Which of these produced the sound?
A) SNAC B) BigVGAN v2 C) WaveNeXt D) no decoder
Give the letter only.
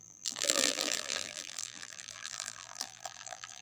B